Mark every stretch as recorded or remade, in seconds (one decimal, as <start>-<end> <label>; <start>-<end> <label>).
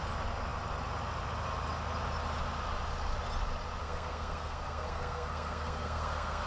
0.0-3.8 recorded; 3.8-6.5 remade